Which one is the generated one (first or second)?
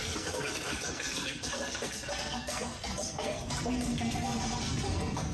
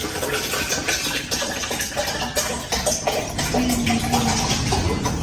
first